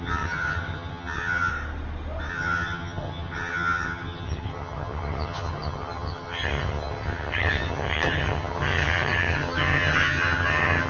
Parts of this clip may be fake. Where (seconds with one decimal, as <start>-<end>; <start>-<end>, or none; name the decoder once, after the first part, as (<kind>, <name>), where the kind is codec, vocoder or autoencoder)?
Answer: 0.0-1.5 (vocoder, HiFi-GAN); 2.3-10.9